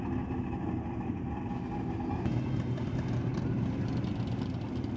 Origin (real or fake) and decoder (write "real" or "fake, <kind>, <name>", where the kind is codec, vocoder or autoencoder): real